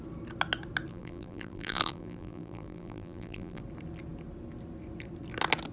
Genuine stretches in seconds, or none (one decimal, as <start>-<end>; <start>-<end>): 0.0-0.9; 3.6-5.7